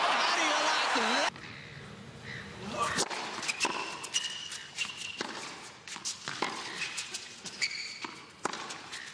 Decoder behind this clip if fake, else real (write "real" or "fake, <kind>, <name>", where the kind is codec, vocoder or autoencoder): real